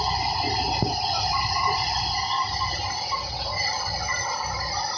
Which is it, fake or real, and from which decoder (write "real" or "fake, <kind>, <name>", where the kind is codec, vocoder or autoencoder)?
real